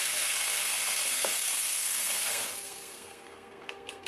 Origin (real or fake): fake